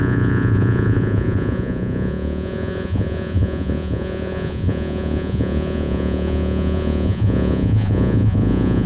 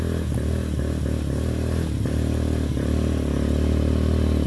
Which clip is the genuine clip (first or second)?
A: second